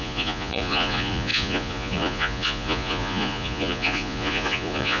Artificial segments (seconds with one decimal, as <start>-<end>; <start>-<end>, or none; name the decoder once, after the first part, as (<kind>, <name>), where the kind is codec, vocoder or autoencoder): 0.0-5.0 (vocoder, Vocos)